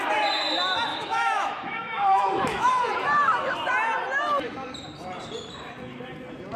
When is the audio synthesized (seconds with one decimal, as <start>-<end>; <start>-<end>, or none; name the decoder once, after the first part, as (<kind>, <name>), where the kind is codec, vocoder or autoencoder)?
0.9-2.7 (autoencoder, DAC-VAE)

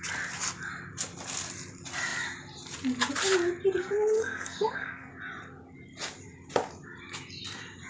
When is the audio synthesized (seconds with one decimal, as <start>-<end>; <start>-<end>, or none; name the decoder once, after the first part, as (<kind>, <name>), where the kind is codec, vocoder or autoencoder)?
3.8-5.1 (codec, SNAC)

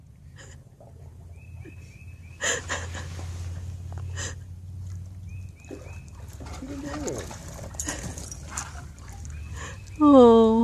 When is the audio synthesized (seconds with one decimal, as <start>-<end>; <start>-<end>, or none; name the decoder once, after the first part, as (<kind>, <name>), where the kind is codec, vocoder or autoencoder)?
none

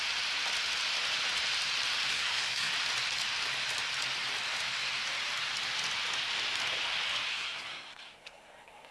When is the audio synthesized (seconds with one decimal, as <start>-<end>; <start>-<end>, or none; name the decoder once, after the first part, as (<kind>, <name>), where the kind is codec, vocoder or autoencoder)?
2.1-2.7 (codec, SNAC); 7.3-8.9

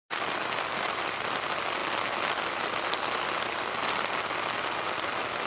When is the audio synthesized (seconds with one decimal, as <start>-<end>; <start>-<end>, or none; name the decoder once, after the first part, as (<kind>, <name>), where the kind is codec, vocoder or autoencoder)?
none